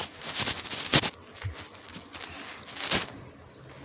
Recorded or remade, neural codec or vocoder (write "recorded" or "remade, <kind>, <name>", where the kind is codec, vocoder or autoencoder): recorded